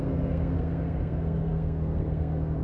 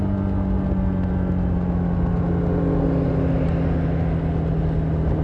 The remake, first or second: first